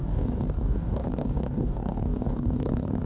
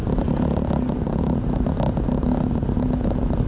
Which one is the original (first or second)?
second